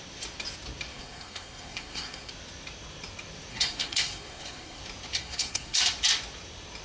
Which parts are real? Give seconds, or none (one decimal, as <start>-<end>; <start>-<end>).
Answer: 0.0-0.9; 2.3-3.5; 4.8-5.2; 5.8-6.8